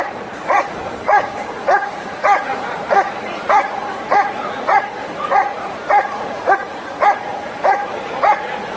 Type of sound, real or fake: fake